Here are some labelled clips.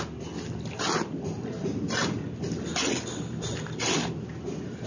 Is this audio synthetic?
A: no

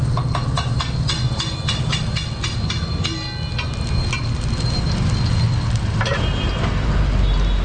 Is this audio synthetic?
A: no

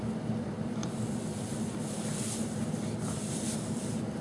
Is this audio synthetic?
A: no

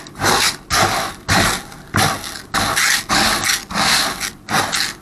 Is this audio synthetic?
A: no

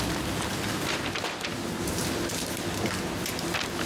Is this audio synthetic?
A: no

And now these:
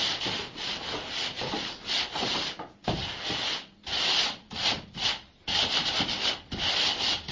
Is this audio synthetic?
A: no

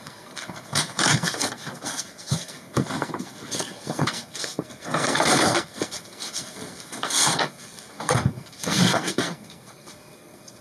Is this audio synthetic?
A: yes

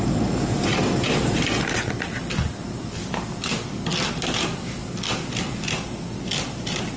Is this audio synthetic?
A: no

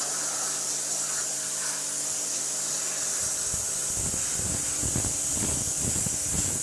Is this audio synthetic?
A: no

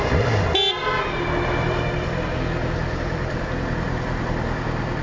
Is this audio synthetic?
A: no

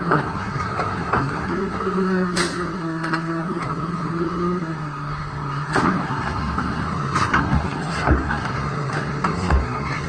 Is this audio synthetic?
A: yes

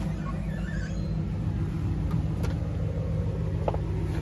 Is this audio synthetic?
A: no